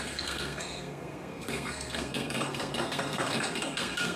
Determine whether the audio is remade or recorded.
remade